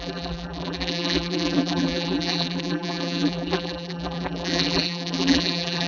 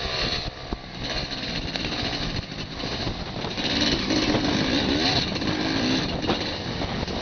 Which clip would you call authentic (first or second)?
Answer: second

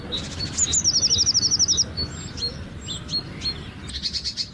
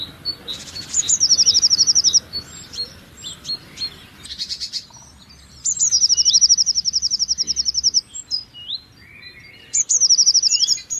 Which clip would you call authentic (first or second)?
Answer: first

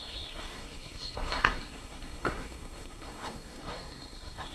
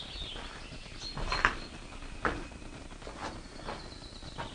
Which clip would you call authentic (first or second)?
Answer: second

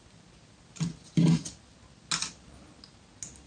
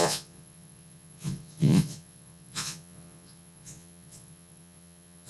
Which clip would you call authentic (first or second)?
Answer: first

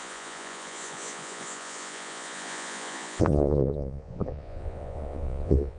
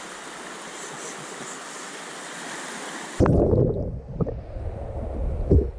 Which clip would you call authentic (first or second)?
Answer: second